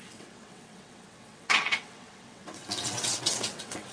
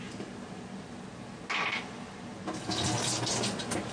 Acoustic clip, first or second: second